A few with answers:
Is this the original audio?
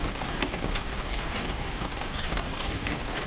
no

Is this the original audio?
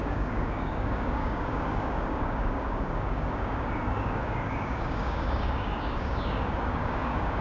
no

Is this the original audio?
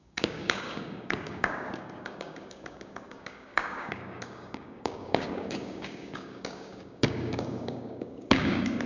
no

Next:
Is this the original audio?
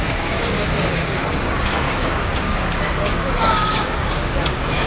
no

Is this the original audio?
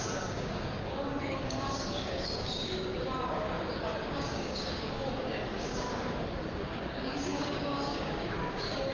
no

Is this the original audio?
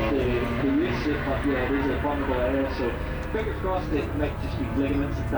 yes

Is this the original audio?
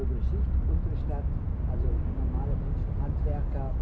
yes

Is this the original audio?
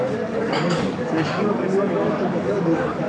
no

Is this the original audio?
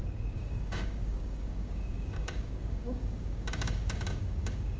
no